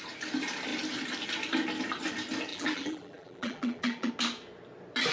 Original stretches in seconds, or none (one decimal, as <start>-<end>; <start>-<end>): 0.0-2.5; 4.1-5.1